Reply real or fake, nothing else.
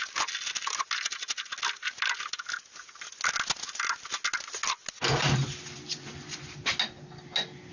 real